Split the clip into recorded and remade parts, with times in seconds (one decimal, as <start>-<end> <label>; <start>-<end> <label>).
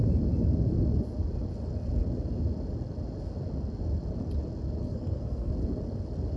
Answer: 0.0-4.8 recorded; 4.8-5.5 remade; 5.5-6.4 recorded